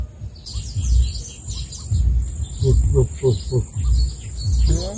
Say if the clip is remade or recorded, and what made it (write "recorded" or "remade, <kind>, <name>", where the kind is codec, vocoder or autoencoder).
recorded